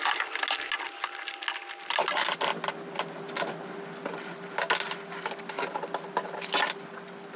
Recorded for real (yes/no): yes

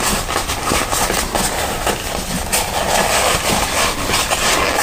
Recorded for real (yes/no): yes